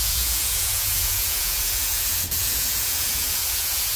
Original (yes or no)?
no